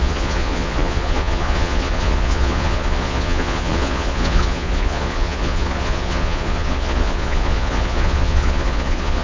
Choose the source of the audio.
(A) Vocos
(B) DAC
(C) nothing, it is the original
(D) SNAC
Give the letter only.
A